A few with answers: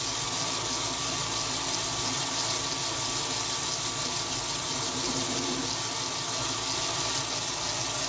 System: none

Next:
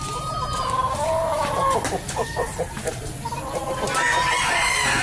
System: none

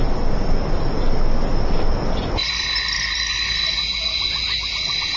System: none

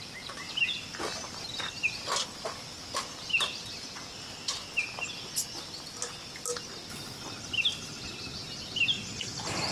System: none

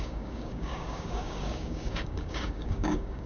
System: codec, DAC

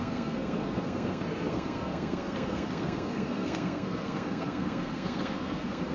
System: codec, SNAC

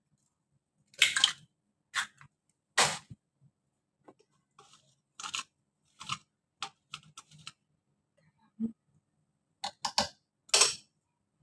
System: none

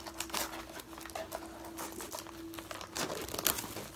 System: none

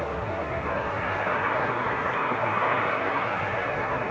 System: codec, SNAC